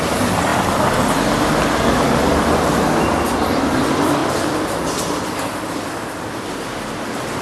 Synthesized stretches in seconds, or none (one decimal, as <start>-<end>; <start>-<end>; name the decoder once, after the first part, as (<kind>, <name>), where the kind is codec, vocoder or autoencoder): none